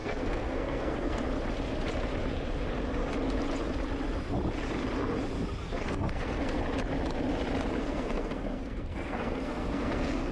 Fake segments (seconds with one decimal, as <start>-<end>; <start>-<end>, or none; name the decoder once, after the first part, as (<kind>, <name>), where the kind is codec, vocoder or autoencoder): 0.0-1.2 (codec, SNAC); 5.6-6.6; 7.8-10.3